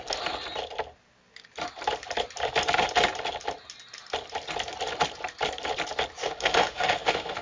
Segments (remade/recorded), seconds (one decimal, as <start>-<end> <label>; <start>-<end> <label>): 0.0-6.2 recorded; 6.2-7.4 remade